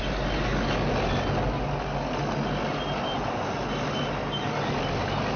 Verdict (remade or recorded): recorded